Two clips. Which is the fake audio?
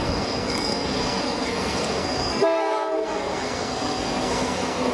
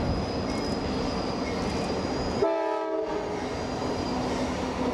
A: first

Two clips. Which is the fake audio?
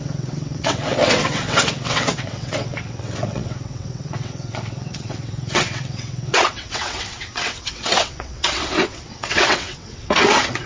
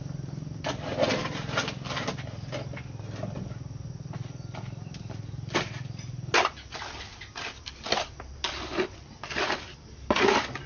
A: first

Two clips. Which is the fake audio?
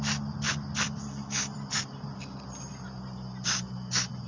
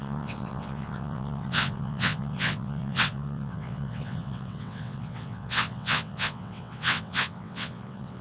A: second